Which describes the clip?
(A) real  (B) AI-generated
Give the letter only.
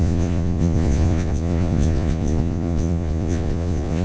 B